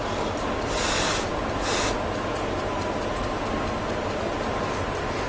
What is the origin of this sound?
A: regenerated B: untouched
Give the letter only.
B